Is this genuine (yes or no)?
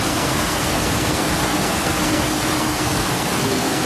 no